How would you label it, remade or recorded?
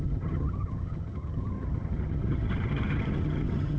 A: remade